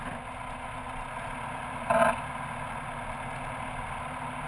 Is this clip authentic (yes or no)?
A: yes